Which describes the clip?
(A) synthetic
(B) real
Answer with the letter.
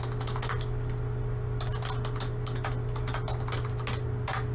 B